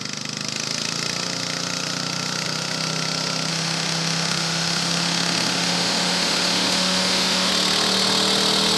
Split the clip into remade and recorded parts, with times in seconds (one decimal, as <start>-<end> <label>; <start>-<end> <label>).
0.0-3.5 recorded; 3.5-7.5 remade; 7.5-8.8 recorded